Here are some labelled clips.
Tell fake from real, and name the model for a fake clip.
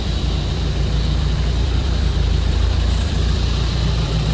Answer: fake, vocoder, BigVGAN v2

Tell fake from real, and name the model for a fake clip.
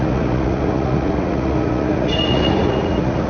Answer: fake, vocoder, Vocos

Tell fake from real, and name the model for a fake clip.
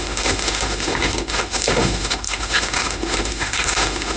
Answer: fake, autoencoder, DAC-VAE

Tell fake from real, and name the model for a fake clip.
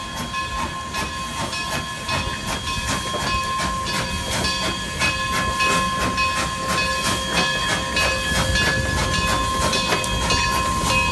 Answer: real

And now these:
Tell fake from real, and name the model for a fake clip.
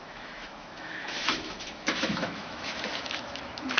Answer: fake, autoencoder, DAC-VAE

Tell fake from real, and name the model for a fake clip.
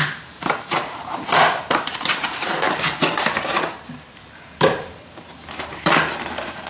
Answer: fake, vocoder, BigVGAN v2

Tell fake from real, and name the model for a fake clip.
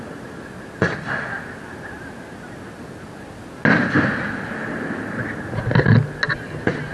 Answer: real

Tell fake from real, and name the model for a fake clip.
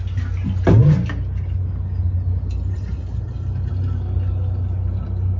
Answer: real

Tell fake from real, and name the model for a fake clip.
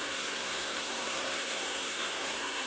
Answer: fake, codec, SNAC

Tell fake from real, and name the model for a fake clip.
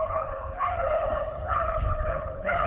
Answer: fake, codec, HILCodec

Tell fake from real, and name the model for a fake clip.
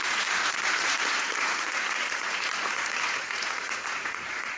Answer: fake, vocoder, Vocos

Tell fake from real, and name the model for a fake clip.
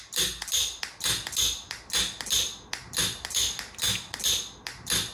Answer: real